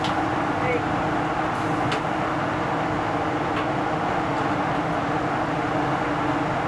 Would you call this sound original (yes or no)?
yes